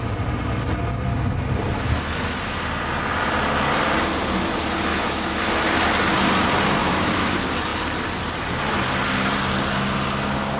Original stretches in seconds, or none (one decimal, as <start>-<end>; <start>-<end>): 0.0-4.9; 5.6-6.8; 7.3-10.6